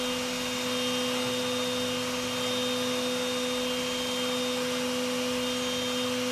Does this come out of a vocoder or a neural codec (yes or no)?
no